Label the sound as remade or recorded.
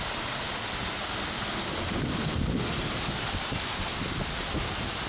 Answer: recorded